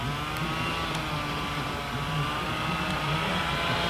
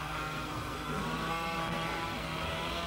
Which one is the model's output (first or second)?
second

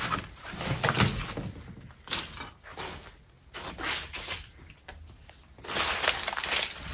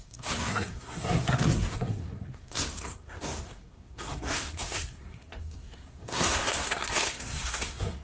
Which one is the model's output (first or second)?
second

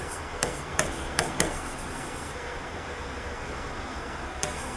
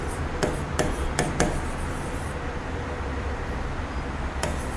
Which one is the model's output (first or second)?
first